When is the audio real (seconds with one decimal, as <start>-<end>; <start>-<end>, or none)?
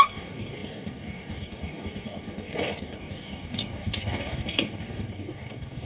none